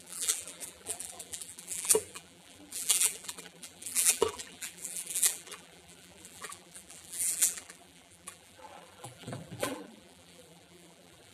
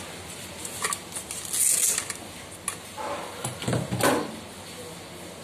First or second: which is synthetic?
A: first